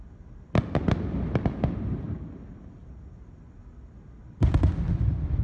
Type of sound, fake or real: real